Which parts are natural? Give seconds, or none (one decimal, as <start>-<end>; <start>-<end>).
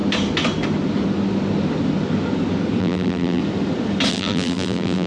0.0-2.8; 3.4-4.1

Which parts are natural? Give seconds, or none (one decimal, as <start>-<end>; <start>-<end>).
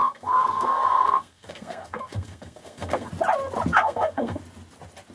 3.1-3.7; 4.4-5.1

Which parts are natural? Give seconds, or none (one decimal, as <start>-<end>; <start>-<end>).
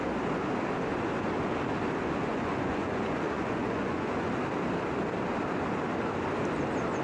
0.0-2.3; 4.3-7.0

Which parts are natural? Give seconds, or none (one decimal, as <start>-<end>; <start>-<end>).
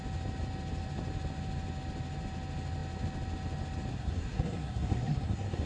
0.0-3.9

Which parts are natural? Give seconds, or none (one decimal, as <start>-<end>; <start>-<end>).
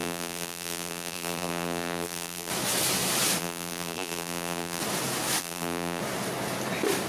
2.5-3.4; 4.8-5.4; 6.0-7.1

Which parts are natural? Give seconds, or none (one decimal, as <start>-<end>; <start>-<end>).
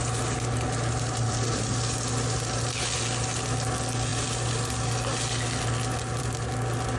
0.0-7.0